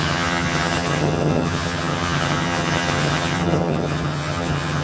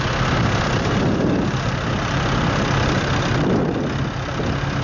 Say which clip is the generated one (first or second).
first